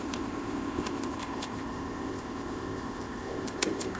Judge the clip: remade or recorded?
remade